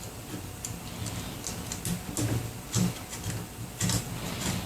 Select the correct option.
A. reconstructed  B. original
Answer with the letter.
B